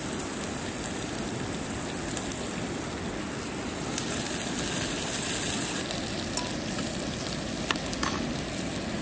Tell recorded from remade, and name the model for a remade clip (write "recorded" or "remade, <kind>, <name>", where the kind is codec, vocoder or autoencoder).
recorded